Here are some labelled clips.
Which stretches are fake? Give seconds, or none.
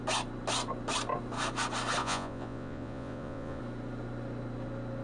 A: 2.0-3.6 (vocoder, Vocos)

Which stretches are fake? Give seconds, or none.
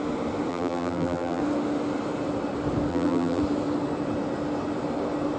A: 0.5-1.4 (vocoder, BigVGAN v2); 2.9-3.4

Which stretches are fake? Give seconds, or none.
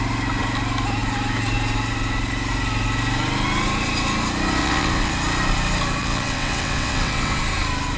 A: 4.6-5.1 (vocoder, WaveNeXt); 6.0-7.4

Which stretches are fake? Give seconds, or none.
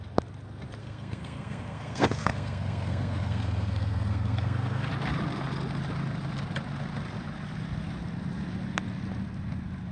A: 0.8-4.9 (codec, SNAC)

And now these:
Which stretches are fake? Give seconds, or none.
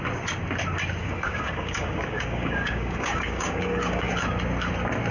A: 1.0-4.1 (codec, DAC)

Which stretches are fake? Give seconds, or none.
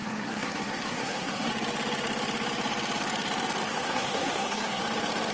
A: 0.0-1.5 (codec, SNAC); 3.7-4.8